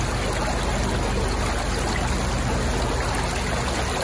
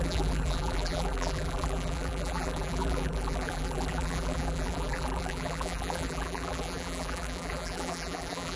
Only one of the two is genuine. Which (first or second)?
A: first